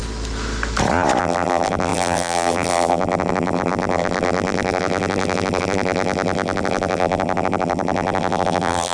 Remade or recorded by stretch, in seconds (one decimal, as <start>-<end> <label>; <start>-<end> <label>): 0.0-1.2 recorded; 1.2-8.9 remade